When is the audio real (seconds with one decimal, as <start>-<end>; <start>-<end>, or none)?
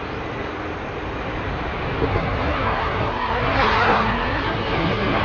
0.0-2.1